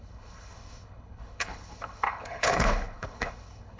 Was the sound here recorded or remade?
remade